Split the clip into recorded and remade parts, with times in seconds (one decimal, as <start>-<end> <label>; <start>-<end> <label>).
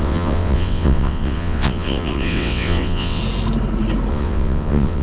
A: 0.0-3.2 remade; 3.2-4.1 recorded; 4.1-5.0 remade